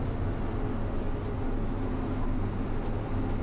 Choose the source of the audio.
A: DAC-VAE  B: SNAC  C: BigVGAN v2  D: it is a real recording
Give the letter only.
D